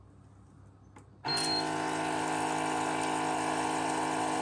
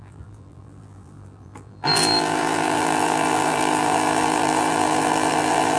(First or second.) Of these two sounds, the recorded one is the first